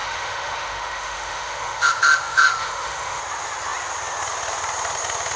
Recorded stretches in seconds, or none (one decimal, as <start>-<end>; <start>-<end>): 3.2-5.4